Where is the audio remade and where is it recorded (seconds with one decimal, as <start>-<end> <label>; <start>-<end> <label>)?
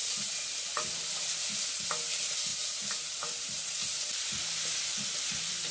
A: 0.0-2.5 recorded; 2.5-4.1 remade; 4.1-5.7 recorded